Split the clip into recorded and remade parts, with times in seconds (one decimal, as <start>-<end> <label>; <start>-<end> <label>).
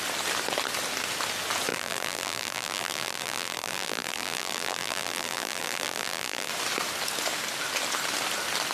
0.0-1.7 recorded; 1.7-6.5 remade; 6.5-8.7 recorded